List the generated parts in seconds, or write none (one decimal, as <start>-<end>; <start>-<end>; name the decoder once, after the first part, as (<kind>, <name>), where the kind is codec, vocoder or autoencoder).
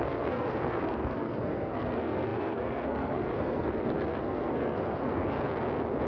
0.0-5.2 (codec, SNAC)